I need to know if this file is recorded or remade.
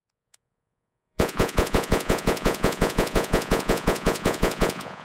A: remade